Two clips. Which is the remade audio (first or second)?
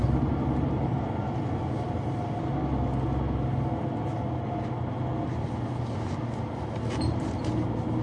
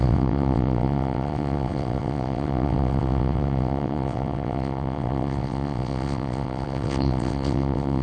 second